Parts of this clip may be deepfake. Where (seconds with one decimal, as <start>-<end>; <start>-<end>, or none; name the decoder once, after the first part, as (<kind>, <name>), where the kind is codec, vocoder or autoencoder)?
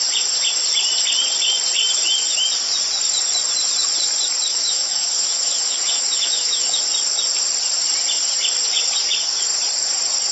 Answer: 4.5-6.8 (autoencoder, DAC-VAE)